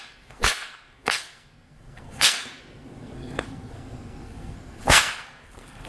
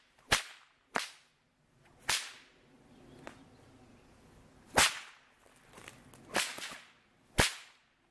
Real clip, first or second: second